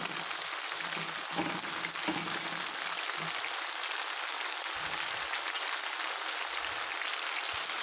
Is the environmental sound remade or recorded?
recorded